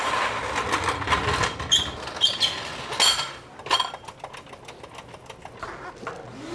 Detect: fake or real real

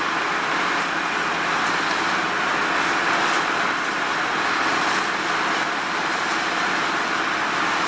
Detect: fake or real real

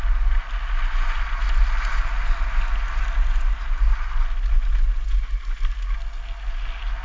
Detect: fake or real real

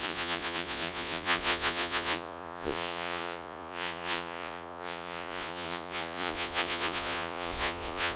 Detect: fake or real fake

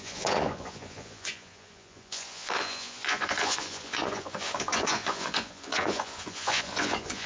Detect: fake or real fake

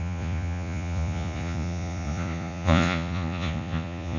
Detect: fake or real fake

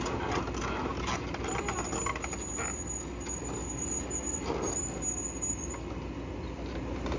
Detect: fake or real real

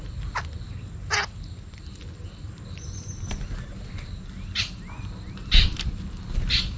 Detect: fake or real real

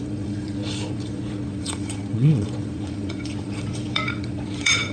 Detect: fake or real fake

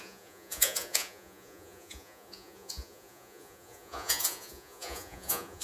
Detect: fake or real fake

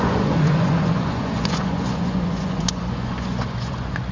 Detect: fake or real fake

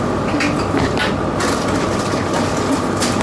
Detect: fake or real real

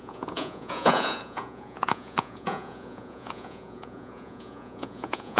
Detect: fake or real fake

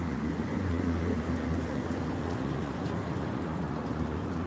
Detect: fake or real fake